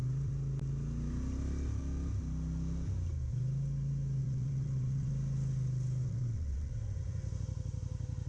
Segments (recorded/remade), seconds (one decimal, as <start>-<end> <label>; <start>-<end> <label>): 0.0-4.2 recorded; 4.2-5.1 remade; 5.1-6.0 recorded; 6.0-6.7 remade; 6.7-8.3 recorded